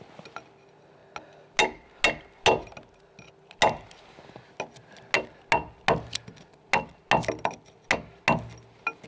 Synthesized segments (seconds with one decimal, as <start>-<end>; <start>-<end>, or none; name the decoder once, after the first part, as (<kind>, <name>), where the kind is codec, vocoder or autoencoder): none